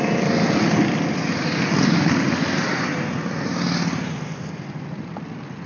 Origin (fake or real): real